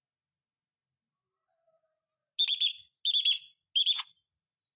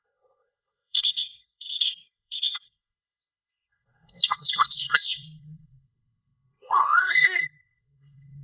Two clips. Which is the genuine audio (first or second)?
first